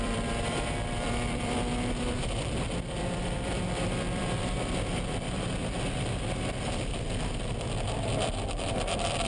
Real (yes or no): no